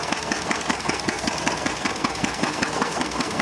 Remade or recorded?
remade